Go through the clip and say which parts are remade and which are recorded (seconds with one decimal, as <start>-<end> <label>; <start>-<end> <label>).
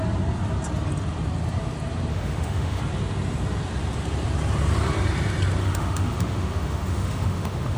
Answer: 0.0-2.1 recorded; 2.1-2.8 remade; 2.8-5.6 recorded; 5.6-7.8 remade